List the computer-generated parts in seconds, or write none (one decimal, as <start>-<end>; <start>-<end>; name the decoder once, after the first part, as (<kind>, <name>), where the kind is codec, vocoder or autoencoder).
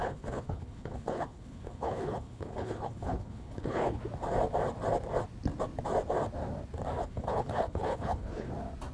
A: 0.0-4.0 (codec, HILCodec); 7.0-8.5